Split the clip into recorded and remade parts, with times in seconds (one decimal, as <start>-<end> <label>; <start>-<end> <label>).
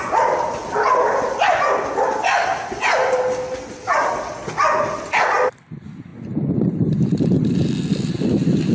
0.0-8.7 recorded